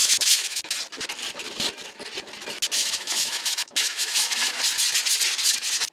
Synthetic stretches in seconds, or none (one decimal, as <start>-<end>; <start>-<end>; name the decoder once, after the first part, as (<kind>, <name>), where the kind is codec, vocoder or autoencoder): 0.0-0.7 (autoencoder, DAC-VAE); 2.8-4.6

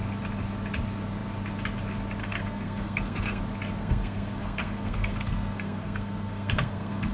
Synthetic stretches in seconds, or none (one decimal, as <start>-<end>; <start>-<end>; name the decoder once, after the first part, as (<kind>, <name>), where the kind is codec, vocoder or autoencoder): 2.2-3.4 (codec, SNAC); 3.8-7.1

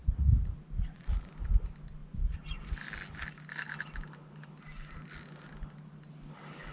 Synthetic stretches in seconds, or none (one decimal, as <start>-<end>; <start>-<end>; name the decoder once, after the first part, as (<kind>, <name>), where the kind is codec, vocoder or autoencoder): 0.0-1.3 (vocoder, Vocos)

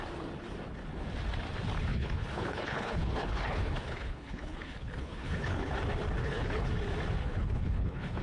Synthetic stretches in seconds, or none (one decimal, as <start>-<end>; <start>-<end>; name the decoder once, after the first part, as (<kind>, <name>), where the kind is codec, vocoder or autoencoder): 1.9-5.7 (codec, HILCodec); 6.2-6.7; 7.2-8.2